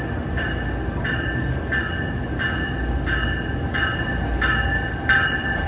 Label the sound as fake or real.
real